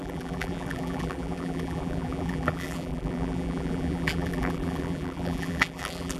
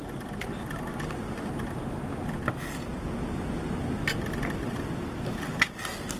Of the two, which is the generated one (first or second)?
first